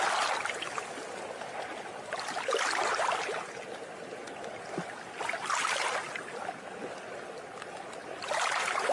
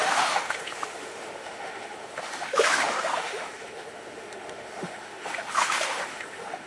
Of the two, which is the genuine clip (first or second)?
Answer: first